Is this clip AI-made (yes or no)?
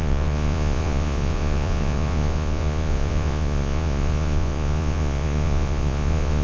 yes